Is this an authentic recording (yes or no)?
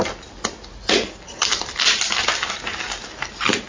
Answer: yes